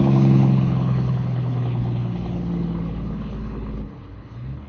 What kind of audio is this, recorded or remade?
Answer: remade